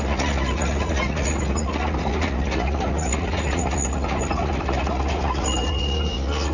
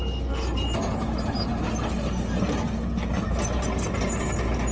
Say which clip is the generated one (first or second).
first